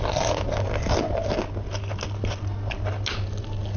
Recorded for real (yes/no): yes